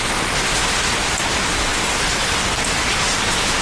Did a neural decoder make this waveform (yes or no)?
no